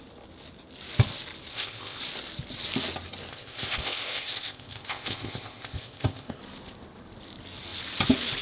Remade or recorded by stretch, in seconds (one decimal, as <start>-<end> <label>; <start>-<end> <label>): 0.0-1.5 recorded; 1.5-2.0 remade; 2.0-3.3 recorded; 3.3-6.4 remade; 6.4-8.4 recorded